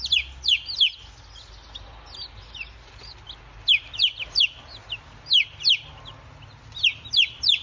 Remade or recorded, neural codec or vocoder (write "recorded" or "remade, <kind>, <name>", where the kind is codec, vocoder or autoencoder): recorded